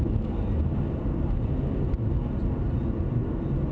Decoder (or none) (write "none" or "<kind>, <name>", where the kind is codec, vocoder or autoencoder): none